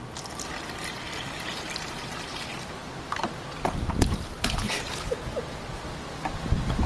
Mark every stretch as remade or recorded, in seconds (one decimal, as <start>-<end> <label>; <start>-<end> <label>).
0.0-2.2 remade; 2.2-6.9 recorded